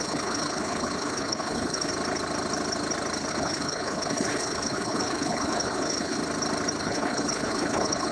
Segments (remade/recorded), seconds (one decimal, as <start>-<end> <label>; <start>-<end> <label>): 0.0-1.9 remade; 1.9-3.3 recorded; 3.3-6.2 remade; 6.2-6.8 recorded; 6.8-8.1 remade